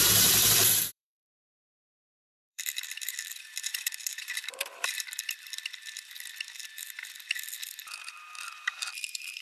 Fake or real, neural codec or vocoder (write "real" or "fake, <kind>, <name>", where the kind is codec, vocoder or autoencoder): fake, vocoder, BigVGAN v2